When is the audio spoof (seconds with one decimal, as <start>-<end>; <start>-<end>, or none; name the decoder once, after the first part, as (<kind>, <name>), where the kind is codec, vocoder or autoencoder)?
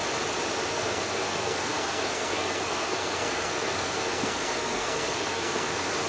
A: 0.7-6.1 (codec, SNAC)